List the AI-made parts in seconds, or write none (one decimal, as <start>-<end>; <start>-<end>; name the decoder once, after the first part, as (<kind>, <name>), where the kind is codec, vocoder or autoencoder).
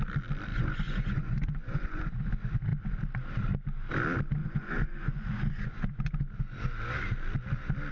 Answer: 0.5-2.3 (vocoder, Vocos); 4.4-6.1